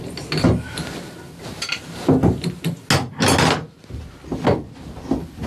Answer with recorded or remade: recorded